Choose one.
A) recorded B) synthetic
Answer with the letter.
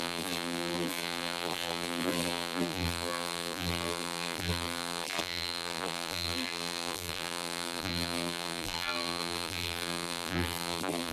B